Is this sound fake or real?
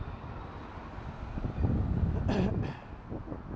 real